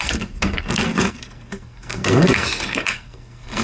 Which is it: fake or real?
fake